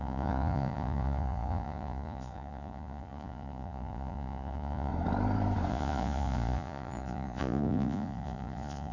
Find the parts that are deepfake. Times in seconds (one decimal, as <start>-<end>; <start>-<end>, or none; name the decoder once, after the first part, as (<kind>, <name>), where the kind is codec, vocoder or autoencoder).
0.0-4.9 (vocoder, Vocos); 5.7-8.9